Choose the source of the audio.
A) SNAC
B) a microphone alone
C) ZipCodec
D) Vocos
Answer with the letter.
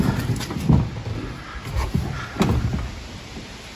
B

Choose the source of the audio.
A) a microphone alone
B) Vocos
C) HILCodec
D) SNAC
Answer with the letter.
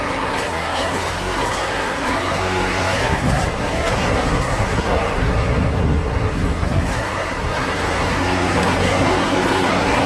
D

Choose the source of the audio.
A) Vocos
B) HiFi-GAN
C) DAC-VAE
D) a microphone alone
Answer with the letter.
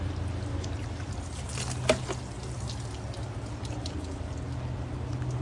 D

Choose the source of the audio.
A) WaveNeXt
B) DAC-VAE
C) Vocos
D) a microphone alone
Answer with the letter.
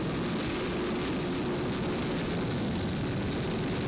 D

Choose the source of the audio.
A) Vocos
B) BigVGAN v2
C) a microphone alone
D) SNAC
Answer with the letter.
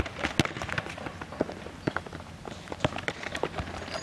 C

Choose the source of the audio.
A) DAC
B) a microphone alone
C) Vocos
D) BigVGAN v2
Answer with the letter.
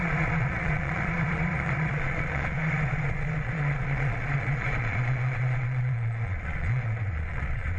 C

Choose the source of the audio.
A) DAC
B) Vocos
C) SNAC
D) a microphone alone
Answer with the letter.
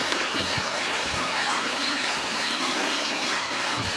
C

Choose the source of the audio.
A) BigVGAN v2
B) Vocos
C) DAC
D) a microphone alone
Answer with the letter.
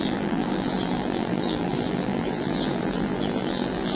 A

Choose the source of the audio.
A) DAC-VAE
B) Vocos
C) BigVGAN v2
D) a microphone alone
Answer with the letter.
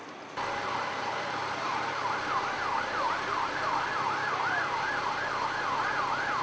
D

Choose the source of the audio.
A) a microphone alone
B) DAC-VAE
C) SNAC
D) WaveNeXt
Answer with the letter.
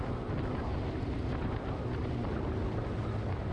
A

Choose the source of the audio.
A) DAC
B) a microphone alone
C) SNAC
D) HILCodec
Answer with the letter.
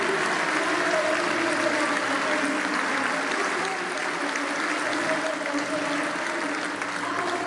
B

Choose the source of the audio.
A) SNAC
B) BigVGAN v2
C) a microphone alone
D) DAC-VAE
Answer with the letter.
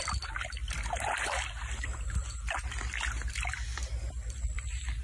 C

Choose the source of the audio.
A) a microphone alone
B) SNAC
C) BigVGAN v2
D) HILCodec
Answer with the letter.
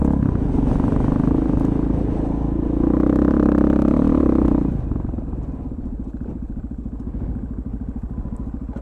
A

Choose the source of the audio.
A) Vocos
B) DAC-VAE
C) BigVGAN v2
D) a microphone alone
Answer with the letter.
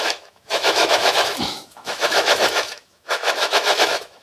B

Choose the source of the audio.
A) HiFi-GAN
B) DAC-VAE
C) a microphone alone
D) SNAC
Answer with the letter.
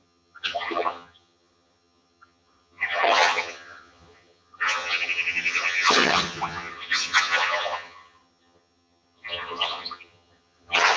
A